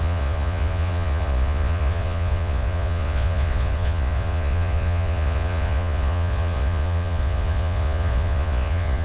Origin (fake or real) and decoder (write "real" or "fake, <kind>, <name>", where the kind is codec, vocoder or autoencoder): fake, vocoder, Vocos